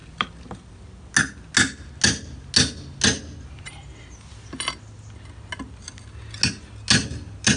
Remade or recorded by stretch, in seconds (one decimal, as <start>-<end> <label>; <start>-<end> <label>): 0.0-7.6 recorded